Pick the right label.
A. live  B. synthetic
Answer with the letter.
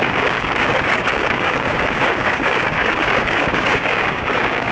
B